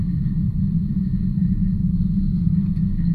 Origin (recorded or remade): recorded